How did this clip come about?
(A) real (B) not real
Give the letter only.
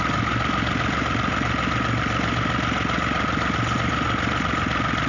A